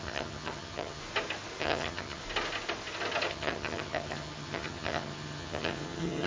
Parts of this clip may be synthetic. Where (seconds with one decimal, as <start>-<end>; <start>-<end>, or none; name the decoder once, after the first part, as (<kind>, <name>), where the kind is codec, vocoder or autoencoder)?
0.0-1.0 (vocoder, HiFi-GAN); 1.6-2.2; 3.3-6.3